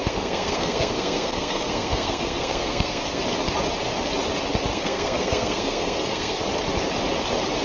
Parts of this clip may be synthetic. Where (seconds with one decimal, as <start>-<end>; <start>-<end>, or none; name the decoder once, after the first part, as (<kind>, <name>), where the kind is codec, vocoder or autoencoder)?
0.0-3.2 (codec, SNAC); 4.7-6.4